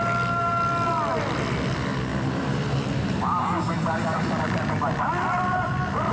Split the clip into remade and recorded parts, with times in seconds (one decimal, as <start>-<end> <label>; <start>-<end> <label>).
0.0-2.1 recorded; 2.1-6.1 remade